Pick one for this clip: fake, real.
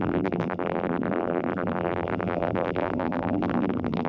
fake